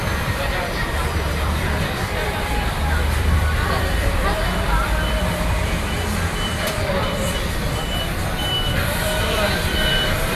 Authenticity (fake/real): fake